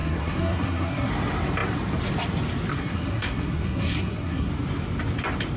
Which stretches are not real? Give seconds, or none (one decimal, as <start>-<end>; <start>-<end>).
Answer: 0.0-1.1; 2.7-4.5